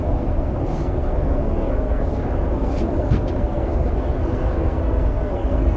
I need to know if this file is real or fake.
fake